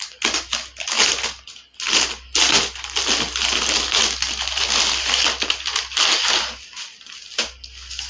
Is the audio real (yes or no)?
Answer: yes